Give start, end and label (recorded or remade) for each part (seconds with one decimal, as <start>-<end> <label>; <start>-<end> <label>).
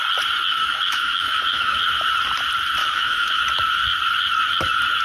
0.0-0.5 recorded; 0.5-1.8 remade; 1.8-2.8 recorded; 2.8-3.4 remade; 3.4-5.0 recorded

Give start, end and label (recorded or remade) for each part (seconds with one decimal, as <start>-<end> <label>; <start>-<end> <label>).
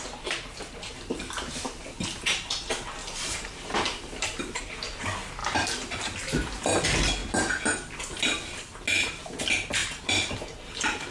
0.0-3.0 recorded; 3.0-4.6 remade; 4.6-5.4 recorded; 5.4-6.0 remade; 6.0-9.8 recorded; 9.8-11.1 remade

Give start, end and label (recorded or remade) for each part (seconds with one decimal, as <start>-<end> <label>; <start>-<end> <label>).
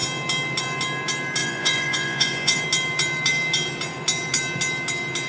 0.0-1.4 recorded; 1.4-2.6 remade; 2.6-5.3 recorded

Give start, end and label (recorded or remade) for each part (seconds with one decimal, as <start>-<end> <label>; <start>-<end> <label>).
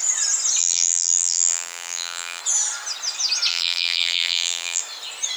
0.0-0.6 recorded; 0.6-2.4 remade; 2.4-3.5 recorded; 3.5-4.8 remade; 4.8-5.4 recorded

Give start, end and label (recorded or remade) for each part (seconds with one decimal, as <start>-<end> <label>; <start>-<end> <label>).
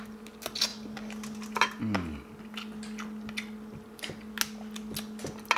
0.0-5.6 recorded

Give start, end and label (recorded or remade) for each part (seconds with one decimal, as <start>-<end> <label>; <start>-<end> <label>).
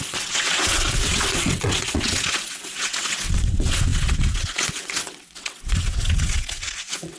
0.0-7.2 remade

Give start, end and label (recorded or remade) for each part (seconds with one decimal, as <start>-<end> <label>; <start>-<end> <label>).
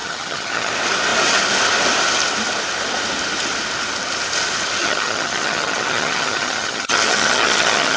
0.0-0.7 remade; 0.7-4.8 recorded; 4.8-8.0 remade